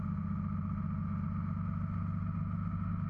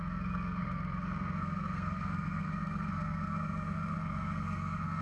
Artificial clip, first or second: second